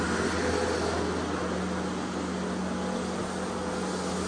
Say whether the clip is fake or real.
real